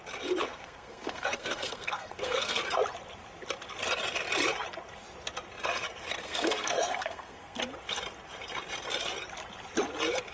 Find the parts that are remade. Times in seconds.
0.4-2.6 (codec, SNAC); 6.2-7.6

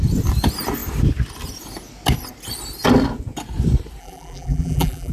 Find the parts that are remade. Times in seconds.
4.0-5.1 (vocoder, BigVGAN v2)

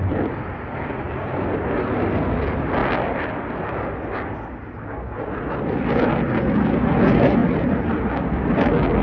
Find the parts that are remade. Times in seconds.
none

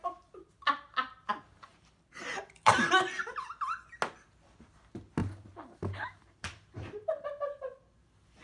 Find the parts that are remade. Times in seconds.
1.7-2.8 (vocoder, BigVGAN v2); 5.2-7.4

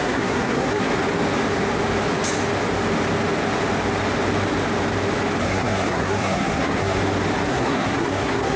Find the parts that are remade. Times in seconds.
0.0-0.9 (codec, SNAC); 5.4-7.0; 7.5-8.6